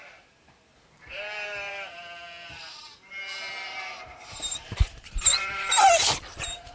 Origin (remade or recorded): remade